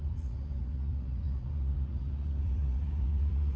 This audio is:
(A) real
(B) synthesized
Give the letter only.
B